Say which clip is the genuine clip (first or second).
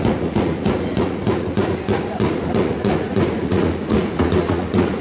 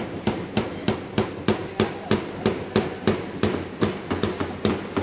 second